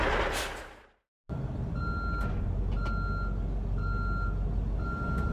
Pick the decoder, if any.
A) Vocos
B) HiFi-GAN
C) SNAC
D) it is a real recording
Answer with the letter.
D